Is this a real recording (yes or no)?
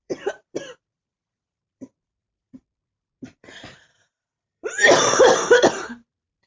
no